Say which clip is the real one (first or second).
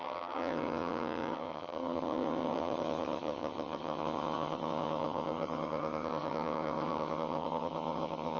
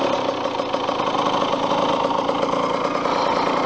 second